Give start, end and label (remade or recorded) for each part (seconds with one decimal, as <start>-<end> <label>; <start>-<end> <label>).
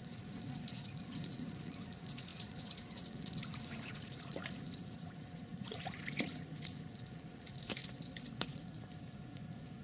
0.0-7.8 remade; 7.8-8.4 recorded; 8.4-9.8 remade